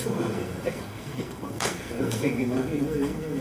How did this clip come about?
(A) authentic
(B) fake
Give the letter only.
B